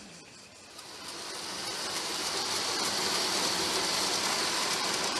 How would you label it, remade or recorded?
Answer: remade